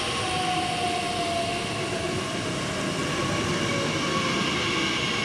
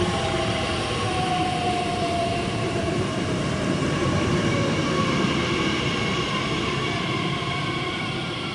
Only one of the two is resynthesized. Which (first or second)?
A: second